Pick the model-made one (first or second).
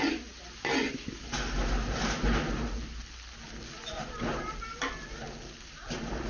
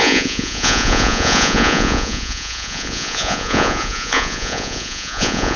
second